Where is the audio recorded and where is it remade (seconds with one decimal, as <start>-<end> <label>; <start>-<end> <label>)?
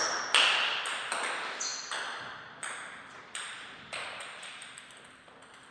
0.0-1.7 recorded; 1.7-5.1 remade; 5.1-5.7 recorded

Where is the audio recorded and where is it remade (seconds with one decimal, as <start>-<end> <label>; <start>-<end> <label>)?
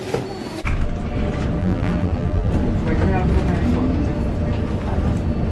0.0-1.6 recorded; 1.6-2.5 remade; 2.5-5.5 recorded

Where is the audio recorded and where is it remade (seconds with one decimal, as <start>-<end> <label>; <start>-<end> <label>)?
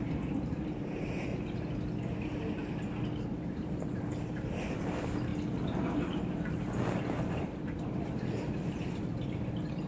0.0-1.3 remade; 1.3-3.2 recorded; 3.2-5.3 remade; 5.3-7.3 recorded; 7.3-9.9 remade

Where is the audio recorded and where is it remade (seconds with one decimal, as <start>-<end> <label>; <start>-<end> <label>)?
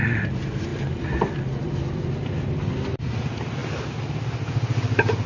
0.0-0.7 recorded; 0.7-2.7 remade; 2.7-3.6 recorded; 3.6-5.3 remade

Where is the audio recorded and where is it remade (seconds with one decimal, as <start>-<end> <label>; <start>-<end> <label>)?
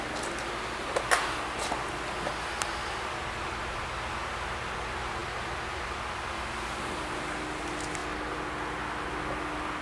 0.0-9.8 recorded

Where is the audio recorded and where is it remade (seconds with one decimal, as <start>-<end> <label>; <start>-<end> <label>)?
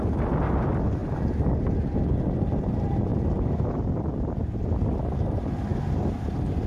0.0-1.0 recorded; 1.0-1.5 remade; 1.5-6.7 recorded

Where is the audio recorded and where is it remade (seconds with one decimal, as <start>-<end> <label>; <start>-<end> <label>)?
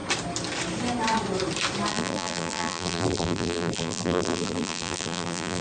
0.0-1.9 recorded; 1.9-5.6 remade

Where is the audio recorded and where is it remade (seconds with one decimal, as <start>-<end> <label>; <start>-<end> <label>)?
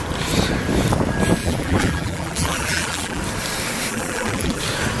0.0-1.4 recorded; 1.4-3.2 remade; 3.2-3.9 recorded; 3.9-4.6 remade; 4.6-5.0 recorded